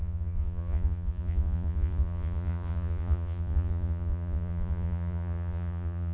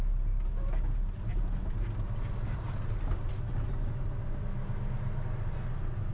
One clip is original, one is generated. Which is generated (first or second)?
first